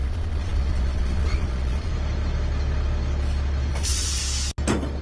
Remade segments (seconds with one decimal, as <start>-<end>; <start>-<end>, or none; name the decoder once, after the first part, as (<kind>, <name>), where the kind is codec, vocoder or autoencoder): 0.0-1.9 (vocoder, Vocos); 3.7-4.2